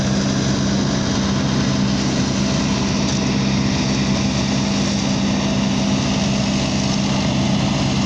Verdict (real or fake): real